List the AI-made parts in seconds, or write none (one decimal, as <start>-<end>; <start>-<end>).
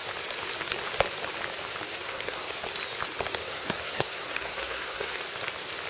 1.9-2.6; 3.4-5.2